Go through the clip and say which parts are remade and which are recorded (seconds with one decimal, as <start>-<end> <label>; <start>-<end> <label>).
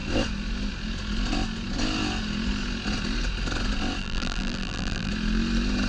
0.0-4.0 recorded; 4.0-5.1 remade; 5.1-5.9 recorded